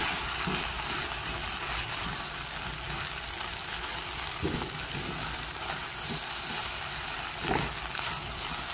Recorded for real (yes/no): yes